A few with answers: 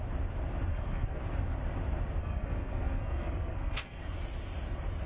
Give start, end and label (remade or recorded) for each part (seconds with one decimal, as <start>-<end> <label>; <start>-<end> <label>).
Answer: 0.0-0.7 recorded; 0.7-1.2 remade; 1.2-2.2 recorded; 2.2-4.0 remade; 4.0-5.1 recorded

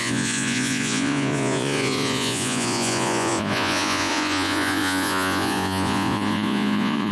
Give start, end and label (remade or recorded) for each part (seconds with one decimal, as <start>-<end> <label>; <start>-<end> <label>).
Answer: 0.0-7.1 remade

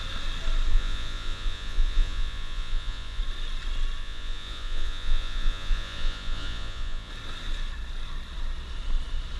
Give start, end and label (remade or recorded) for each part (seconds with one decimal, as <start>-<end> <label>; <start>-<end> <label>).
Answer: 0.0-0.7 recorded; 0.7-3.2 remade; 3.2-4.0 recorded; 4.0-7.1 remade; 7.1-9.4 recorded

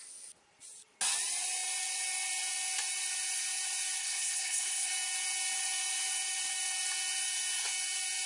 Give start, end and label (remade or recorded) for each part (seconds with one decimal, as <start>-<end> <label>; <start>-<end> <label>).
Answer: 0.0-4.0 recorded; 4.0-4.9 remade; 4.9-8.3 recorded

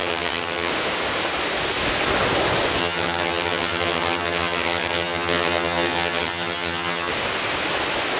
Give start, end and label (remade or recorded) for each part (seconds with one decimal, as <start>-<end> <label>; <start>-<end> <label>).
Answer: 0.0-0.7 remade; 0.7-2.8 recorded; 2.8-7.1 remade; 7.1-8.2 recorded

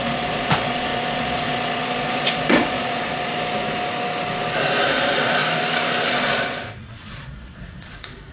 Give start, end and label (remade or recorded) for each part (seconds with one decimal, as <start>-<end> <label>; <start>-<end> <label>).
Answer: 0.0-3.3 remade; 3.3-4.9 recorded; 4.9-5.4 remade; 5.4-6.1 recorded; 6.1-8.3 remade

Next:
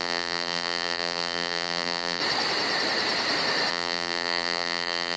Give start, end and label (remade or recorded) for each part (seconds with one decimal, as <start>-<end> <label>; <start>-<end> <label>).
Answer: 0.0-2.2 remade; 2.2-3.7 recorded; 3.7-5.2 remade

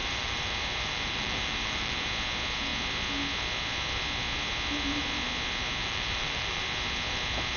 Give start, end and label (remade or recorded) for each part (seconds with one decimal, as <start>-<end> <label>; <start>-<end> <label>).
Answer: 0.0-2.1 remade; 2.1-5.8 recorded; 5.8-6.6 remade; 6.6-7.6 recorded